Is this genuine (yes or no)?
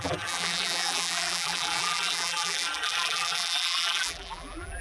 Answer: no